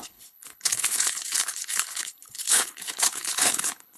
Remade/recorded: remade